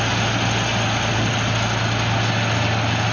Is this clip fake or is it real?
real